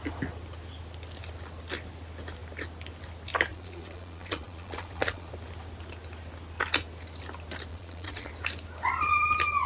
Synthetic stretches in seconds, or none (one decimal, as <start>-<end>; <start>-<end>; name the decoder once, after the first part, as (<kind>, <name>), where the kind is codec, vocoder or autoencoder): 3.5-5.3 (vocoder, Vocos); 7.7-8.3